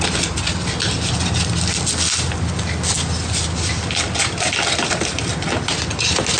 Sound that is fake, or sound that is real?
real